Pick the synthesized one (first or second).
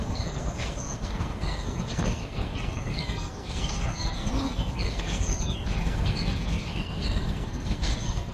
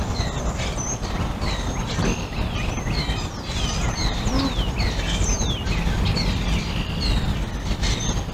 first